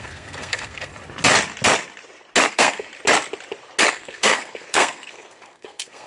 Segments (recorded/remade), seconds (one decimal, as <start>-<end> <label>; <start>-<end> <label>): 0.0-0.9 remade; 0.9-2.5 recorded; 2.5-2.9 remade; 2.9-3.9 recorded; 3.9-6.1 remade